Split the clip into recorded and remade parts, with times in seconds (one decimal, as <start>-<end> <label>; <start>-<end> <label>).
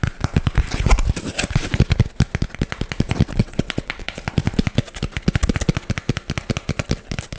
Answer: 0.0-3.4 recorded; 3.4-4.1 remade; 4.1-7.4 recorded